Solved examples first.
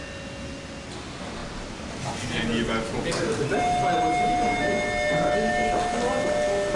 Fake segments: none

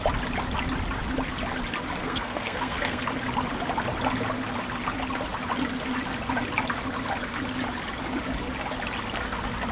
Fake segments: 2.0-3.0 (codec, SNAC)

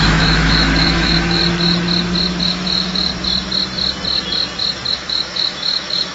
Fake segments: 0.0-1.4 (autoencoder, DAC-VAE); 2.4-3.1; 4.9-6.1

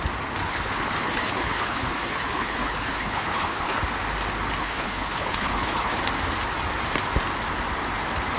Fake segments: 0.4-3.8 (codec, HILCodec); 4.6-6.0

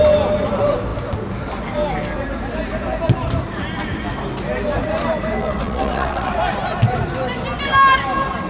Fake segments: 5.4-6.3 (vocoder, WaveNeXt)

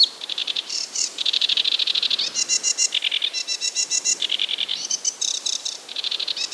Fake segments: 0.0-2.1 (vocoder, BigVGAN v2); 3.6-6.5